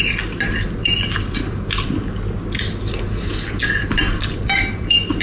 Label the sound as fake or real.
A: fake